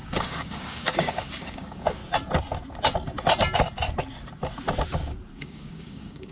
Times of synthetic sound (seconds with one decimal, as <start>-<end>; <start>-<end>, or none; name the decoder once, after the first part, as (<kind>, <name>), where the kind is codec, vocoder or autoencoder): 0.0-2.0 (codec, DAC); 5.3-6.3